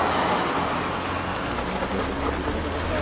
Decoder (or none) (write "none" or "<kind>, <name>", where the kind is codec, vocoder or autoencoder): none